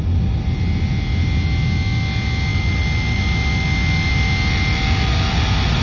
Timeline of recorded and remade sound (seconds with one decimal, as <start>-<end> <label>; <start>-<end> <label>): 0.0-5.8 recorded